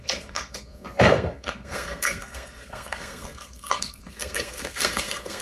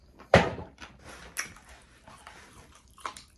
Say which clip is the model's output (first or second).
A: first